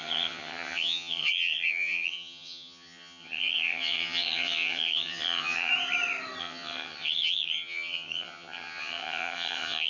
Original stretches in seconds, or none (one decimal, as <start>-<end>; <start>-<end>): 5.7-6.4